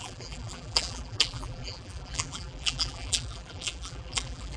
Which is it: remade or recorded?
remade